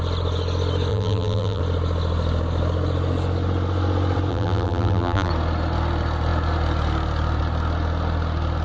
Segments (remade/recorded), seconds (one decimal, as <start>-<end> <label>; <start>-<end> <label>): 0.0-0.9 recorded; 0.9-1.6 remade; 1.6-4.3 recorded; 4.3-5.3 remade; 5.3-8.6 recorded